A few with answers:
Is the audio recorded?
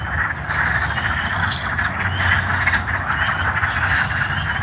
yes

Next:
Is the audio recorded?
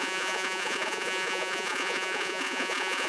no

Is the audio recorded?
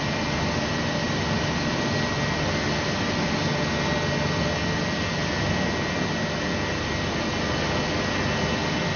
yes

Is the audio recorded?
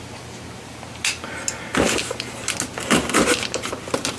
yes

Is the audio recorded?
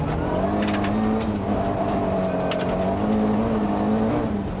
yes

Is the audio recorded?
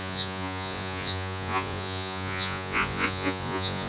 no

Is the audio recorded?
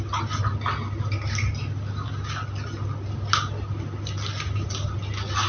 yes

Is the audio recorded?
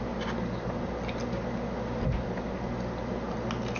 yes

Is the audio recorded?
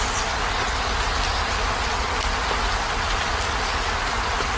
yes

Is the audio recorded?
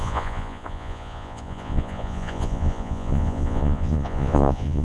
no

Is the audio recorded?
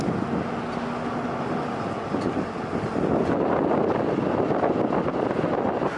yes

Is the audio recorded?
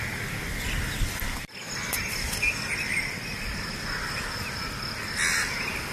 yes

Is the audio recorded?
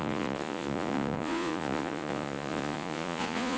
no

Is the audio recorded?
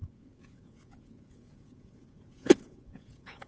no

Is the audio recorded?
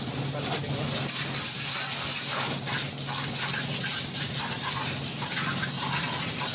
yes